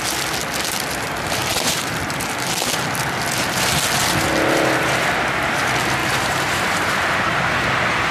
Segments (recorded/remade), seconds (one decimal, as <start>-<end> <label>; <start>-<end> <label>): 0.0-6.0 recorded; 6.0-7.4 remade; 7.4-8.1 recorded